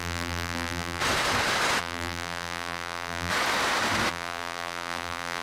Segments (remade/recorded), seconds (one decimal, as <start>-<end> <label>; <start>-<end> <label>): 0.0-1.0 remade; 1.0-1.8 recorded; 1.8-3.3 remade; 3.3-4.1 recorded; 4.1-5.4 remade